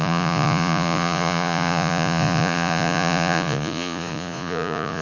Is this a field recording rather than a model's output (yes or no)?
no